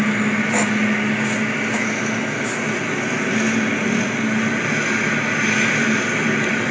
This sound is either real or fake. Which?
real